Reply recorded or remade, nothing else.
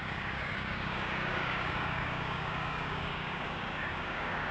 remade